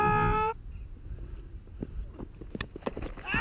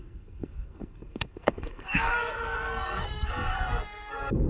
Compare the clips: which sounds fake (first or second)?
second